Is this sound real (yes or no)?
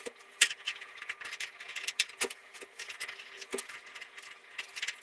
no